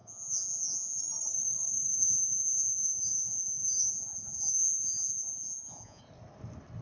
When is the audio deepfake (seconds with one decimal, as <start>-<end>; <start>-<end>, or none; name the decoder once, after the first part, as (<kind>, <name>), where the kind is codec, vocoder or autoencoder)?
0.0-1.0 (vocoder, Vocos); 1.9-6.0

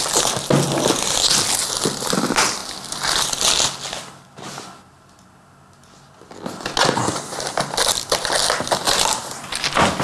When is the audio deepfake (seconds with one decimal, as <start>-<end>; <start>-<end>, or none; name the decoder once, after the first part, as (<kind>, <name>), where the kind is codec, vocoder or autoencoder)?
none

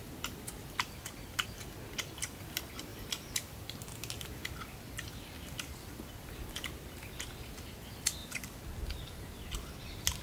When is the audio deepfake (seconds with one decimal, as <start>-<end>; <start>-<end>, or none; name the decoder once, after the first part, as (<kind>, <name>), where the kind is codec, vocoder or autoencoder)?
none

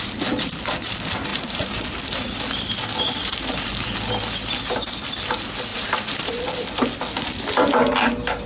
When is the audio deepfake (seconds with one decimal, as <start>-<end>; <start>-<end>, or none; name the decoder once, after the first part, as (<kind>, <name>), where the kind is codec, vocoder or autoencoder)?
1.3-2.4 (vocoder, BigVGAN v2); 3.2-3.7; 5.7-6.3

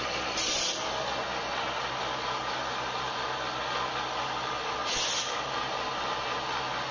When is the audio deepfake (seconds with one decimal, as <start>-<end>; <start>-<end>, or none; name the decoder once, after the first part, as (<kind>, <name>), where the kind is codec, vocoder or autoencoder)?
none

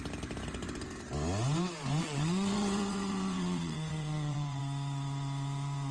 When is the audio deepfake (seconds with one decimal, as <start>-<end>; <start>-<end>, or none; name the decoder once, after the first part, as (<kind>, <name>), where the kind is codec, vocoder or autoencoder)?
2.0-4.6 (vocoder, WaveNeXt)